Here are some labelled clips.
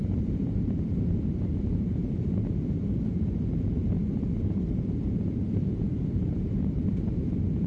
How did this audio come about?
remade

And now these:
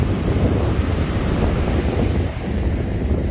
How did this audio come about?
remade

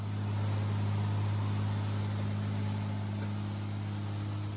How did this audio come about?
recorded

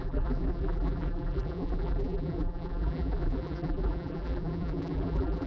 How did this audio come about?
remade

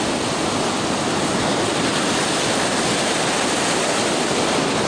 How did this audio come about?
recorded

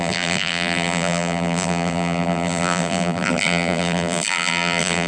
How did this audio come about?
remade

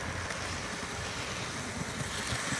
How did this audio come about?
recorded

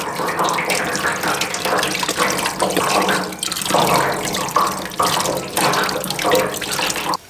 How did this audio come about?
recorded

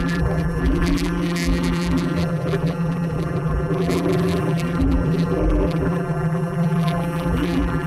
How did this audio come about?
remade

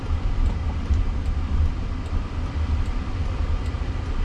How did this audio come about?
remade